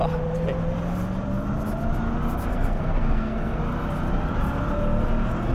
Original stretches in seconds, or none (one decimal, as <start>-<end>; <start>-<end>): 0.0-2.5; 3.6-5.5